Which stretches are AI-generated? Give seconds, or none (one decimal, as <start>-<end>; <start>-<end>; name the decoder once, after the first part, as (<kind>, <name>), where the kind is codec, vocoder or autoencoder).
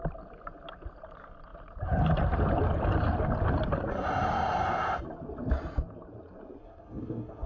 6.6-7.5 (codec, SNAC)